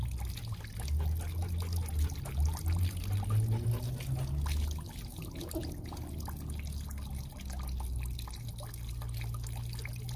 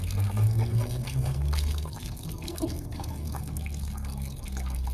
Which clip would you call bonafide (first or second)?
first